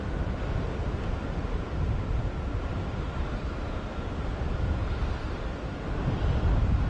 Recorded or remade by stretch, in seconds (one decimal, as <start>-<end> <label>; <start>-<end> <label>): 0.0-1.4 recorded; 1.4-2.2 remade; 2.2-6.9 recorded